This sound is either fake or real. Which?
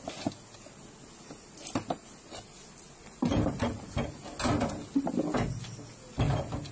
real